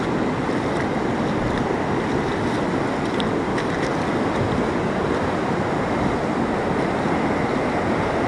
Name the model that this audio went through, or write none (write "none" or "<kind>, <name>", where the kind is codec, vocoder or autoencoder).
none